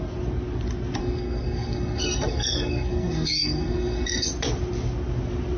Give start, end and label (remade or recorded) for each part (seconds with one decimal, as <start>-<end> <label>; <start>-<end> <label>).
0.0-1.0 recorded; 1.0-4.3 remade; 4.3-5.6 recorded